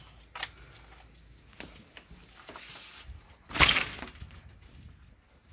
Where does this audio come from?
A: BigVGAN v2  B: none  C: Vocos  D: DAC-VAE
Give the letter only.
B